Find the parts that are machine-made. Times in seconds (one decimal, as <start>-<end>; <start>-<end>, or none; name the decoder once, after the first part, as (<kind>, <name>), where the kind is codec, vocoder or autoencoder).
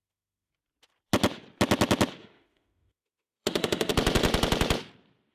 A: 0.0-0.5 (autoencoder, DAC-VAE); 2.2-3.9